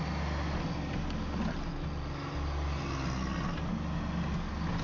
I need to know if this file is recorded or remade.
recorded